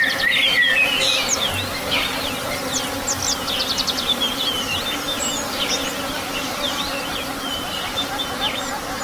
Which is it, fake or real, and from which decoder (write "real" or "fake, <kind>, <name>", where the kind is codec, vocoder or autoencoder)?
real